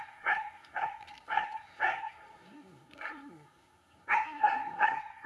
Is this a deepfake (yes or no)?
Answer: yes